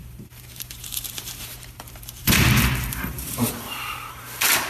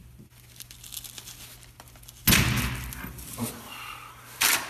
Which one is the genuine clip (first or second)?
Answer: second